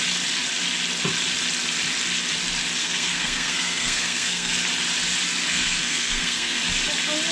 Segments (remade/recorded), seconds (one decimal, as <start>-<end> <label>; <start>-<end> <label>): 0.0-2.8 recorded; 2.8-4.5 remade; 4.5-5.5 recorded; 5.5-6.6 remade; 6.6-7.3 recorded